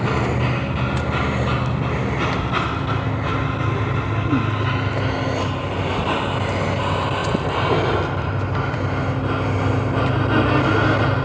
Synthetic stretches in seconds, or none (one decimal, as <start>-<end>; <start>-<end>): none